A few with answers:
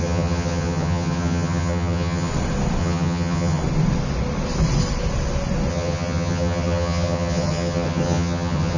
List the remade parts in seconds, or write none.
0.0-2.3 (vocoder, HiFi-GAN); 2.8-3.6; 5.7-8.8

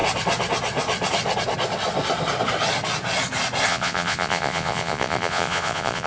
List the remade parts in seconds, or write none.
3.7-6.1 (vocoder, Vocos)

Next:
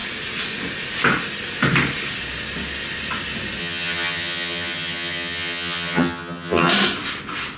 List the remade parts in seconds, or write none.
3.6-6.7 (vocoder, HiFi-GAN)

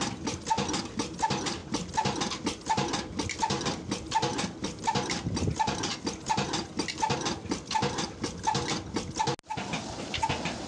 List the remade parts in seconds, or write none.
none